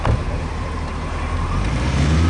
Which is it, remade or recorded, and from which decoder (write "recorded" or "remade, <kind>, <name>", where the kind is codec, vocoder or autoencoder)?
remade, vocoder, BigVGAN v2